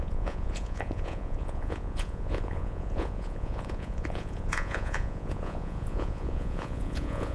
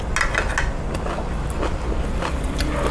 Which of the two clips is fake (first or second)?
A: first